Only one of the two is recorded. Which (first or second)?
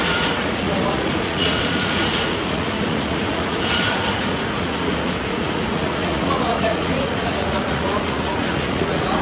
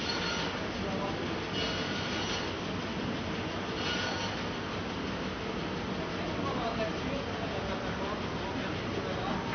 second